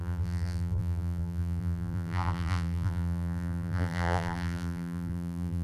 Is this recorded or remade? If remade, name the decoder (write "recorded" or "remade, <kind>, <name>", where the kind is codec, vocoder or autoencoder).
remade, vocoder, BigVGAN v2